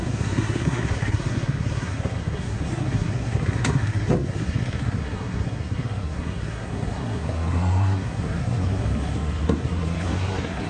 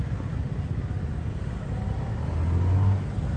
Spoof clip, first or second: first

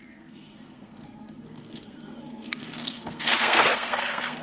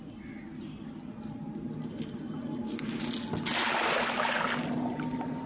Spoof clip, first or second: first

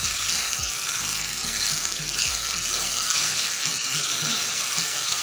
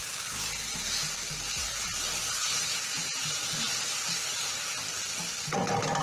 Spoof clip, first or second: first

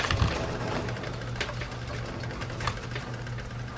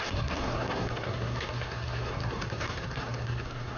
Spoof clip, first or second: second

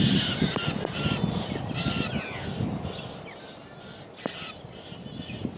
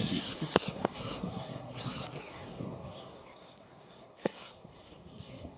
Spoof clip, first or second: second